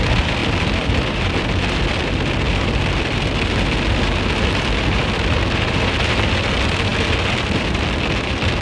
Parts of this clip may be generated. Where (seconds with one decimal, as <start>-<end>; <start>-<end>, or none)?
0.0-6.9; 8.2-8.6